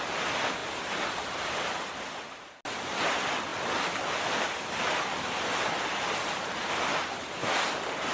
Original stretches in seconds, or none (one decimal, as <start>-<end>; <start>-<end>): 0.0-8.1